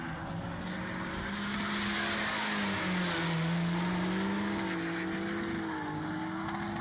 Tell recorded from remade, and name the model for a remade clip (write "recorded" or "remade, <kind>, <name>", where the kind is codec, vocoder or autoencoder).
recorded